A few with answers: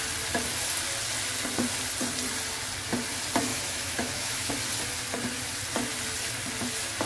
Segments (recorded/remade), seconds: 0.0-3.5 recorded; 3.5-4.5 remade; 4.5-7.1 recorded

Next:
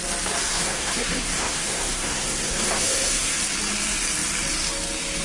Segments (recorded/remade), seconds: 0.0-0.5 recorded; 0.5-3.4 remade; 3.4-5.2 recorded